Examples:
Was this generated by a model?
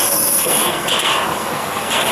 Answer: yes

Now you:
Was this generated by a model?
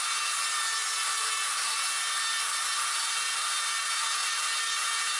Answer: no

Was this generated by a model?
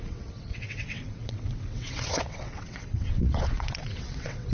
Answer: yes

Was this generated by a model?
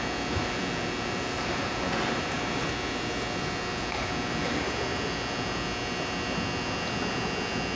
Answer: no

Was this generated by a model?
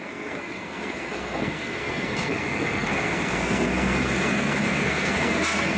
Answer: yes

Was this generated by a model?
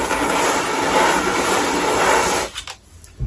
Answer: no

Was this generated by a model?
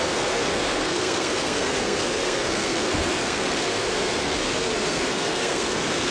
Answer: yes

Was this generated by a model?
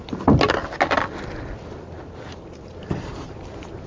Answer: no